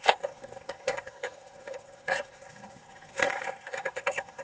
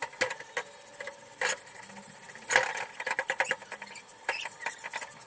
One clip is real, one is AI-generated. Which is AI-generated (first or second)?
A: first